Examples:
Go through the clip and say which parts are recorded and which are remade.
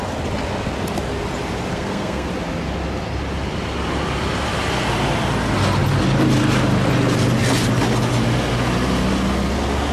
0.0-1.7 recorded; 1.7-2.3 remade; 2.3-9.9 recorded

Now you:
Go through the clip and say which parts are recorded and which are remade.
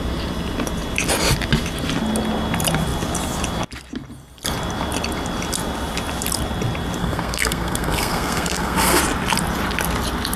0.0-7.0 recorded; 7.0-9.0 remade; 9.0-10.4 recorded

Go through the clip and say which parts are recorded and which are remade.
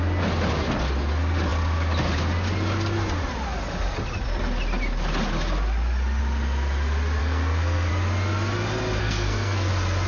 0.0-7.2 recorded; 7.2-7.9 remade; 7.9-9.0 recorded; 9.0-9.7 remade; 9.7-10.1 recorded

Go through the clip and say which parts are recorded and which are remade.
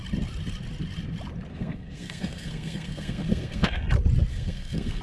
0.0-1.5 recorded; 1.5-3.8 remade; 3.8-4.3 recorded; 4.3-5.0 remade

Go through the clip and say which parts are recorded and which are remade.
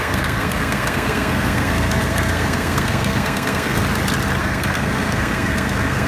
0.0-3.8 remade; 3.8-4.4 recorded; 4.4-6.1 remade